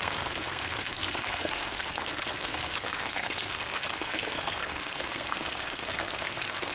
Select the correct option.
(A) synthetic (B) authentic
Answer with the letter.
A